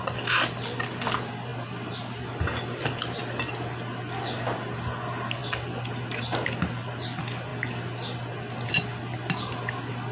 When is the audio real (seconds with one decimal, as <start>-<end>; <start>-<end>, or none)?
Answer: 0.0-5.4; 6.2-10.1